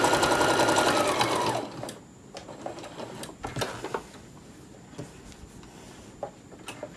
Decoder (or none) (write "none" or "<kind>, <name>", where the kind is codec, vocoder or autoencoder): none